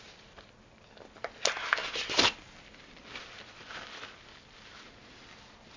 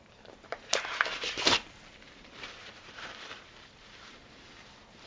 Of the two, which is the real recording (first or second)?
first